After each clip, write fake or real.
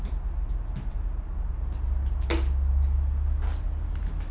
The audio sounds real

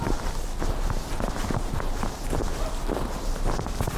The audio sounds real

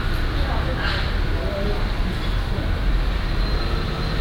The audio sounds real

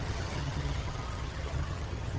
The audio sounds fake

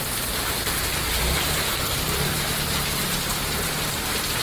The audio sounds fake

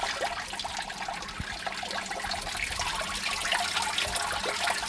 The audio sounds real